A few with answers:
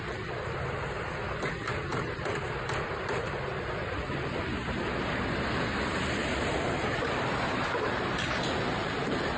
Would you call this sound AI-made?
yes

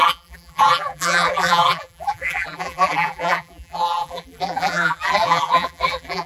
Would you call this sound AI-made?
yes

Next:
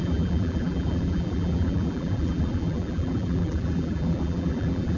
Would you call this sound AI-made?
yes